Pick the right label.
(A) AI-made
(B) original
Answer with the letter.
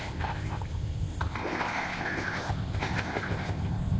A